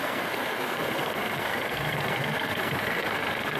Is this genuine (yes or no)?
no